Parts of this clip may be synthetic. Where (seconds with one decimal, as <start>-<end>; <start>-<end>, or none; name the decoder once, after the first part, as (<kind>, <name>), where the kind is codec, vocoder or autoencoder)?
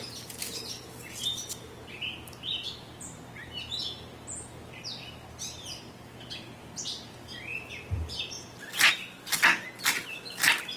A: none